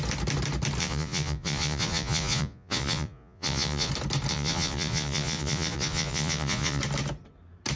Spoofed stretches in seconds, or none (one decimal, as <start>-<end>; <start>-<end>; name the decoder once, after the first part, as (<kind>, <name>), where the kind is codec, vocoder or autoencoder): 0.8-3.9 (vocoder, Vocos); 4.3-6.8

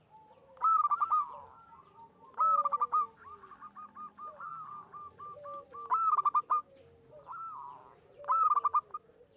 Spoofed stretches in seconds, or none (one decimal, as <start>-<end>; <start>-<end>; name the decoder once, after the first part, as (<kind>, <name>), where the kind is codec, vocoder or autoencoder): none

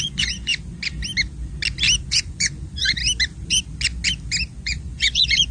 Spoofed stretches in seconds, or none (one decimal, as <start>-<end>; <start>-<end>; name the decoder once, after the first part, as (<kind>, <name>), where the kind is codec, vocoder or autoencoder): 0.0-0.5 (vocoder, Vocos); 2.1-3.0; 4.6-5.5

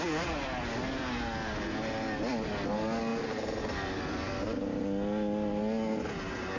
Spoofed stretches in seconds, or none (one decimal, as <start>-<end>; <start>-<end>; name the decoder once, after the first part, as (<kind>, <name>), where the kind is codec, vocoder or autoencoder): none

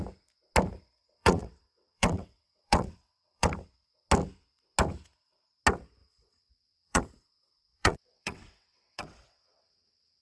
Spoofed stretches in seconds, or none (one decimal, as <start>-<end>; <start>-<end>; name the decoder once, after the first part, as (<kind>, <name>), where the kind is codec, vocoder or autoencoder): 1.0-3.5 (vocoder, WaveNeXt); 6.0-7.0; 7.7-10.2